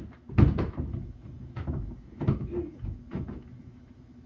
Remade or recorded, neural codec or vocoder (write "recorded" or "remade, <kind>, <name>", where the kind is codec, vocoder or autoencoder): remade, autoencoder, DAC-VAE